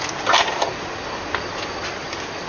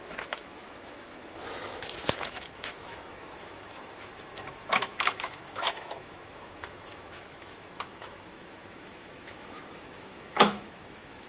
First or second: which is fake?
second